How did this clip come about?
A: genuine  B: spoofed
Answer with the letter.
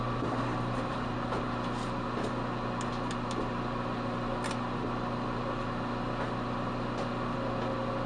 A